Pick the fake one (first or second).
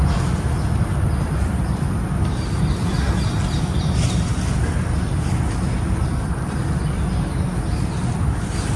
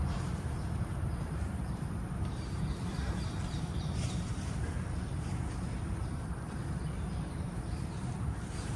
second